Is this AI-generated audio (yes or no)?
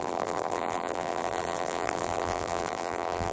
yes